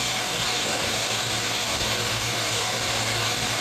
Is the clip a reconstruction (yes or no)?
yes